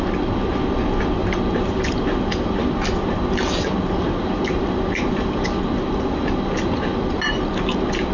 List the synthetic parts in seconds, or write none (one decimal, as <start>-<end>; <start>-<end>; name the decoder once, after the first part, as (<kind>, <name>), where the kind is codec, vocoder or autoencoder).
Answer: 1.2-6.1 (vocoder, BigVGAN v2); 6.9-8.1